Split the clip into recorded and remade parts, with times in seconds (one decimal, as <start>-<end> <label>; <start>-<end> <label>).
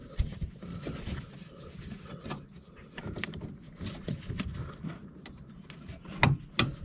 0.0-6.8 recorded